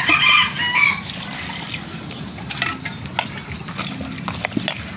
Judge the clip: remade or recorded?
recorded